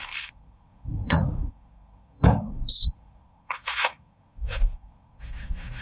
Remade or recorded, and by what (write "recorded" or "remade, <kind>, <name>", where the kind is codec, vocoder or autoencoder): remade, codec, SNAC